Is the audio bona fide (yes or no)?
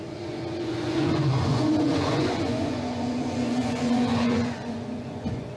no